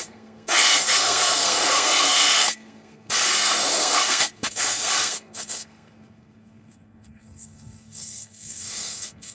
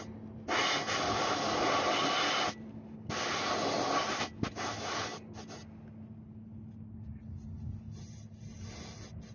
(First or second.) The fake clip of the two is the first